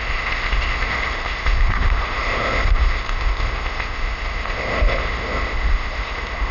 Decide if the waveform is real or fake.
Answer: fake